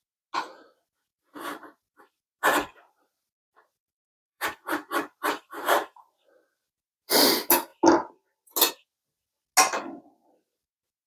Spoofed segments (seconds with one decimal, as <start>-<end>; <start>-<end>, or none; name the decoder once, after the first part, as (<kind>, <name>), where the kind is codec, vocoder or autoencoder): 1.1-1.9 (vocoder, BigVGAN v2); 2.7-6.3